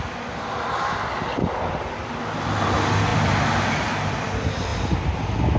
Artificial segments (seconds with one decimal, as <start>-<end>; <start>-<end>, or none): none